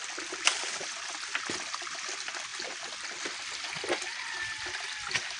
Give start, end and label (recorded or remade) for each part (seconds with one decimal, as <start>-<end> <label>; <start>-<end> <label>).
0.0-5.4 recorded